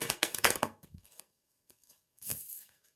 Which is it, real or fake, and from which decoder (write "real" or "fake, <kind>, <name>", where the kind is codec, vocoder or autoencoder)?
fake, codec, SNAC